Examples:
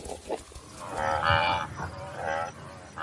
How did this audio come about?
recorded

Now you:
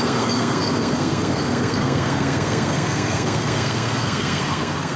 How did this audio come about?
remade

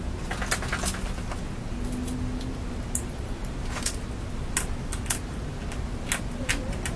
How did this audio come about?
recorded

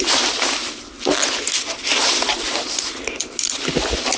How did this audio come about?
recorded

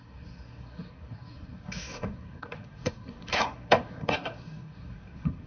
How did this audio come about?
remade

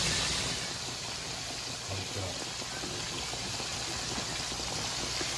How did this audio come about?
recorded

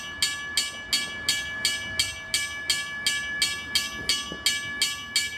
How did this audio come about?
recorded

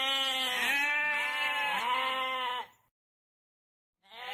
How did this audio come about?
recorded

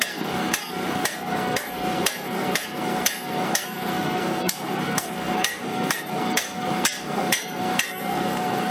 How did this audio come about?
remade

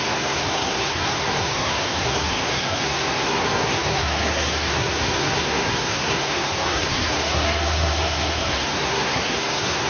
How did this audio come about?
remade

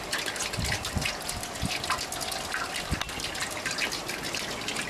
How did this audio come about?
recorded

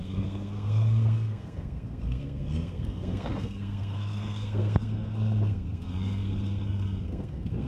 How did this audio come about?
remade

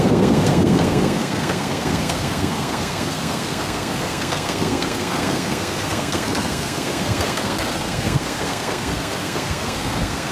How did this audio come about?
remade